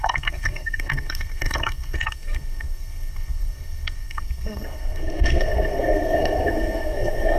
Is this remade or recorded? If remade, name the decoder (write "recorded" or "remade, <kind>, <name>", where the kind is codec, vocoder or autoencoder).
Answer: remade, codec, SNAC